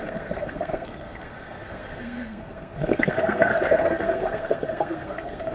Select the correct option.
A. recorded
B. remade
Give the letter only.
B